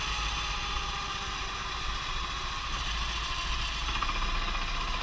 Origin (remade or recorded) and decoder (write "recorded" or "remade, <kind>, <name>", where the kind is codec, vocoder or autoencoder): recorded